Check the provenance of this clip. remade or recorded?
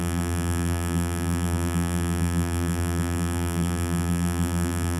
remade